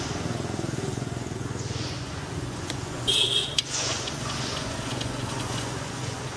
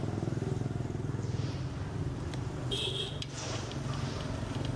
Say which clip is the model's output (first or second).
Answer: first